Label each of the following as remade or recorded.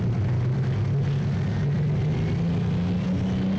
recorded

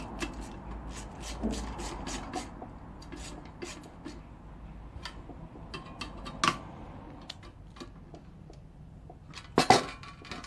recorded